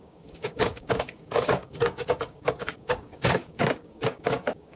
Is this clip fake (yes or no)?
yes